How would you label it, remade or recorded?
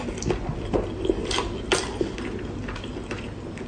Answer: recorded